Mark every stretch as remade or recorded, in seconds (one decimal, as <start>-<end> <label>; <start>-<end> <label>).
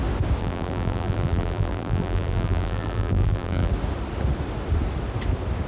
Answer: 0.0-0.4 recorded; 0.4-3.7 remade; 3.7-5.7 recorded